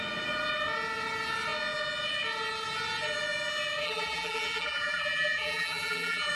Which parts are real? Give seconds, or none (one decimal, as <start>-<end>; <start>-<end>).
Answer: 0.0-3.8